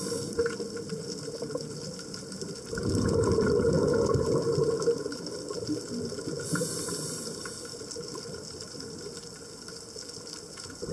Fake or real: real